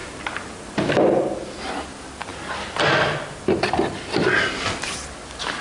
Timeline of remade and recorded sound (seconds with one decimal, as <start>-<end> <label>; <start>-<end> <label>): 0.0-0.8 remade; 0.8-5.6 recorded